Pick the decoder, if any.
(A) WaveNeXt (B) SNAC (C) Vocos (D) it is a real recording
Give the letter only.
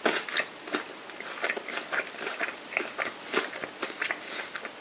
D